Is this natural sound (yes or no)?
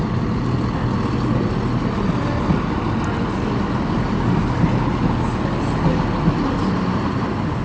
yes